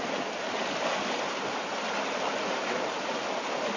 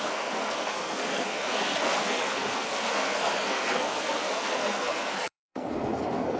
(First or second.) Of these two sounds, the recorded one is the first